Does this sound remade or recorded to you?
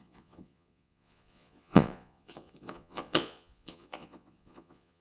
remade